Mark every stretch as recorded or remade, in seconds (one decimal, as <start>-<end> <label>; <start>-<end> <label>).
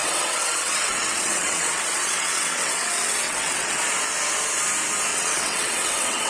0.0-3.8 remade; 3.8-5.1 recorded; 5.1-6.3 remade